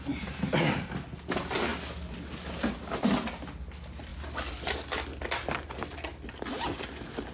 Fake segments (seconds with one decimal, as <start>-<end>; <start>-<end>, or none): none